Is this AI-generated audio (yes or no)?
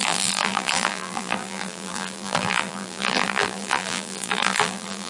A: yes